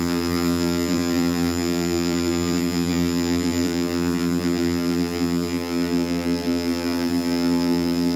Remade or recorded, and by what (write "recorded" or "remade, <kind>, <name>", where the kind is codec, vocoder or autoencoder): remade, vocoder, BigVGAN v2